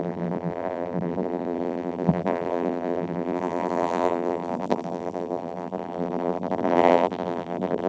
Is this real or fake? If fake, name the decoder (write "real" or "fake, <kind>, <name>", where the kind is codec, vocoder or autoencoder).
fake, vocoder, BigVGAN v2